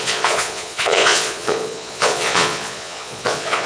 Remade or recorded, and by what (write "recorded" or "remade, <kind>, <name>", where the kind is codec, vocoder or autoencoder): remade, vocoder, Vocos